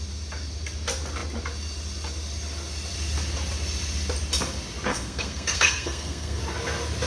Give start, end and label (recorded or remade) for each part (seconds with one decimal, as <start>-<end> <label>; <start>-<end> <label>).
0.0-4.9 recorded; 4.9-6.4 remade; 6.4-7.1 recorded